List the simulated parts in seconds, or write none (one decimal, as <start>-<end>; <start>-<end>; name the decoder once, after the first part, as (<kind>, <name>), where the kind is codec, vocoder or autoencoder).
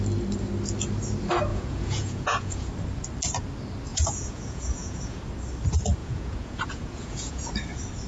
1.5-2.7 (vocoder, Vocos); 3.9-5.2; 6.0-7.5